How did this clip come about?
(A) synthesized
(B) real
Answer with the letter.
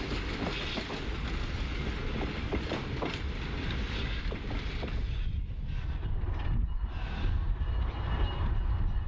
B